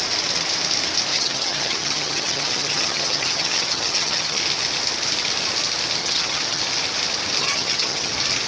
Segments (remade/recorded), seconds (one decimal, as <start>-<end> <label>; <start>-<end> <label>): 0.0-1.1 recorded; 1.1-4.4 remade; 4.4-6.0 recorded; 6.0-6.6 remade; 6.6-7.4 recorded; 7.4-8.1 remade; 8.1-8.5 recorded

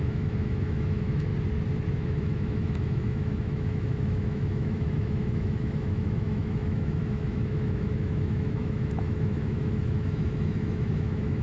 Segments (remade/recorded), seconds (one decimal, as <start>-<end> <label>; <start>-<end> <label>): 0.0-1.3 remade; 1.3-1.9 recorded; 1.9-11.4 remade